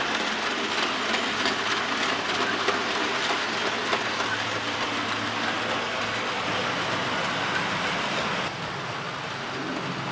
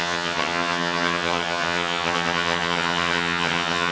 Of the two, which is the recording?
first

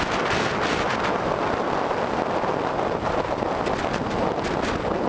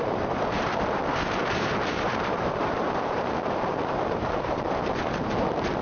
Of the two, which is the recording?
first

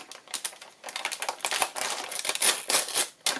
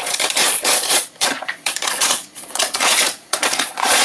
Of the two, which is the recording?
first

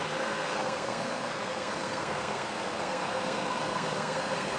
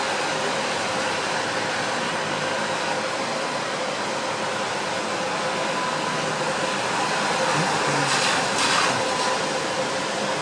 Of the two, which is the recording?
second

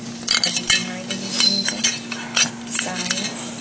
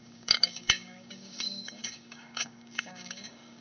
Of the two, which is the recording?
first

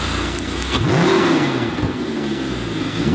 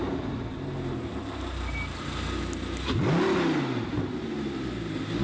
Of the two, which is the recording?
second